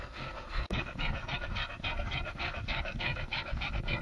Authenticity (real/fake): fake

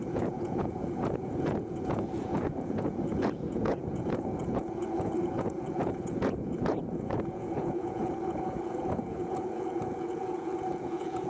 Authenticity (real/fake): fake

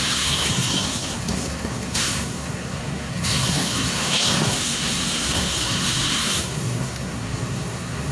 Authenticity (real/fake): fake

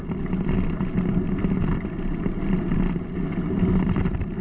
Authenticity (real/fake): real